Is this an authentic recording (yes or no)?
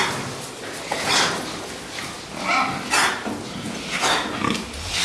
yes